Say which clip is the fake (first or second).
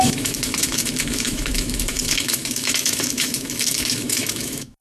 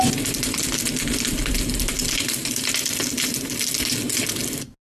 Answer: first